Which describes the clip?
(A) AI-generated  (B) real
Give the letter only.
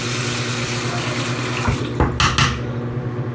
B